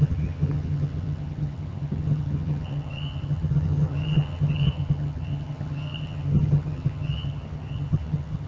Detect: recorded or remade remade